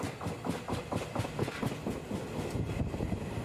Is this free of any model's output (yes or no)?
yes